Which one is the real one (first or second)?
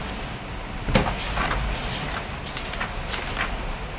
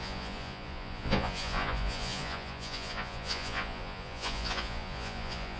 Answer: first